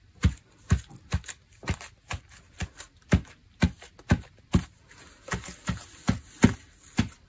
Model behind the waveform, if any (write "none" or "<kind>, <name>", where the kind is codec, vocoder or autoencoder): none